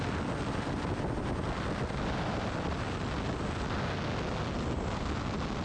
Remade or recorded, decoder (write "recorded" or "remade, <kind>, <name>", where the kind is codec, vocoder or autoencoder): recorded